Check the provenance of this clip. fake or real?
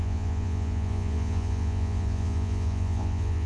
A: fake